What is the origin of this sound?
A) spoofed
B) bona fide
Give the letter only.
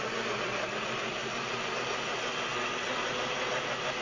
B